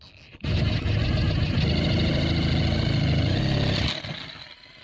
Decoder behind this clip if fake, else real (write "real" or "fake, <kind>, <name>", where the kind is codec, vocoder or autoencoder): real